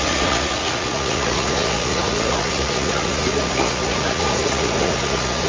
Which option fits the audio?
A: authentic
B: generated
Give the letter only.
B